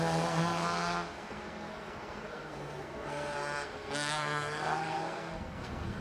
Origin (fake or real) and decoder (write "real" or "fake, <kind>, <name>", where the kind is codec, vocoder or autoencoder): fake, codec, SNAC